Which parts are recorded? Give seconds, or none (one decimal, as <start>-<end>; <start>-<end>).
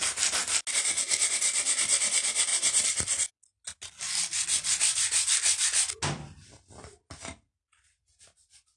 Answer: 0.0-8.8